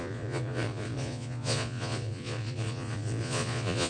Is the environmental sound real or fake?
fake